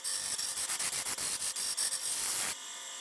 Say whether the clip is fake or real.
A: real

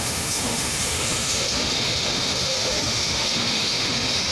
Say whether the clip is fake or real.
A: fake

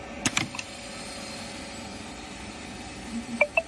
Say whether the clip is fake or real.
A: real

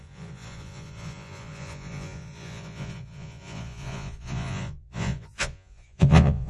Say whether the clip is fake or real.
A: fake